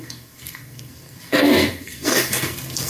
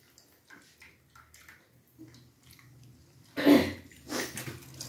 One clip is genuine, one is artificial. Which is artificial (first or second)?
first